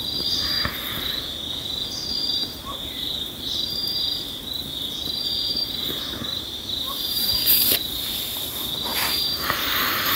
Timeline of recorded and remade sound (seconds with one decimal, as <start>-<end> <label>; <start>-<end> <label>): 0.0-2.3 recorded; 2.3-4.2 remade; 4.2-5.8 recorded; 5.8-7.3 remade; 7.3-8.9 recorded; 8.9-10.2 remade